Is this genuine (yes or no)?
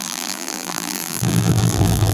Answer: no